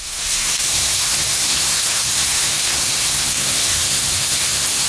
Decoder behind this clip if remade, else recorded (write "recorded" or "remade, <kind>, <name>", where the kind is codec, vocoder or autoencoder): remade, codec, SNAC